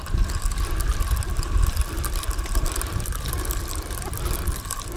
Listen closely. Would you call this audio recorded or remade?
recorded